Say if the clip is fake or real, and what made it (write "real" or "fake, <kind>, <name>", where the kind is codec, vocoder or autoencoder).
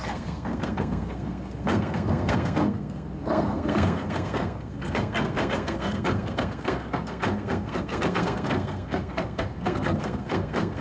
fake, codec, SNAC